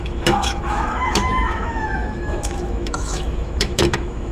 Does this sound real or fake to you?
fake